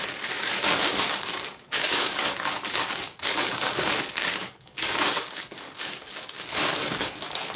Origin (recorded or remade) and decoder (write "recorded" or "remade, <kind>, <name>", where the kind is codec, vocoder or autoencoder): remade, codec, DAC